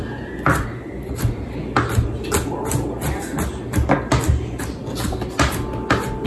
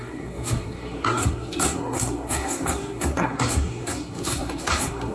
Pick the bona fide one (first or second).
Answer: first